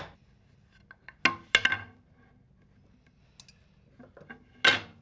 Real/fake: real